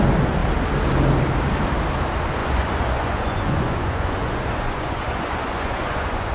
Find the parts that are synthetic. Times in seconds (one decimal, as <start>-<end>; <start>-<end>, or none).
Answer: 2.4-6.3